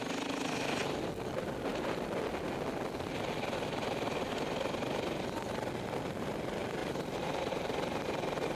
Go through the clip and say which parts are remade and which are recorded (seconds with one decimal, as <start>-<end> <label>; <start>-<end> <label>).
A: 0.0-1.7 recorded; 1.7-2.3 remade; 2.3-6.8 recorded; 6.8-7.5 remade; 7.5-8.6 recorded